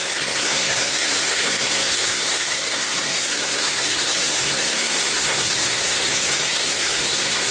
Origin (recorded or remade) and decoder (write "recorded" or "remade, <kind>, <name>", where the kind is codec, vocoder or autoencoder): remade, codec, SNAC